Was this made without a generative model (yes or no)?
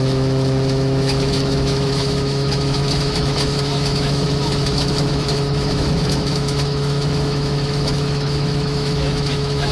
no